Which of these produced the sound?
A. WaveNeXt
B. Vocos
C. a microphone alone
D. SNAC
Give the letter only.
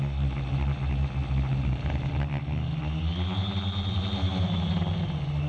C